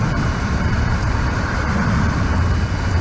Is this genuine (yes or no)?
yes